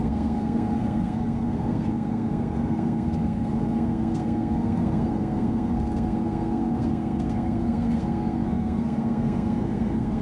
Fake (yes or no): yes